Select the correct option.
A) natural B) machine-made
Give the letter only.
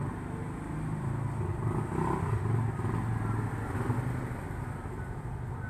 A